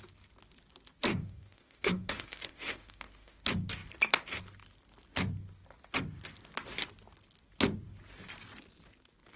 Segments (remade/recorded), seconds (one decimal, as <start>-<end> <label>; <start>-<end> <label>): 0.0-1.1 recorded; 1.1-3.4 remade; 3.4-9.4 recorded